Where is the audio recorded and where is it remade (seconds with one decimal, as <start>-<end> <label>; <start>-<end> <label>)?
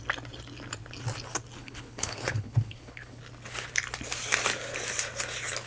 0.0-1.6 recorded; 1.6-3.2 remade; 3.2-5.7 recorded